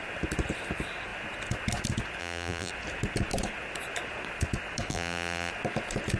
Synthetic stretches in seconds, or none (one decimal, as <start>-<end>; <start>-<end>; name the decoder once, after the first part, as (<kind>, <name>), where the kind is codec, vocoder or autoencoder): 2.2-2.7 (vocoder, BigVGAN v2); 4.9-5.5